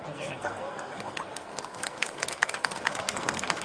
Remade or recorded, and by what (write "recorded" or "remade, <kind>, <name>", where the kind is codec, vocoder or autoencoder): remade, codec, SNAC